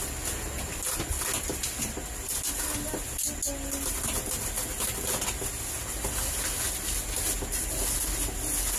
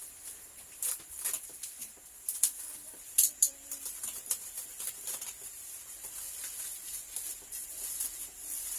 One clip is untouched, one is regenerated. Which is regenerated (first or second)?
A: second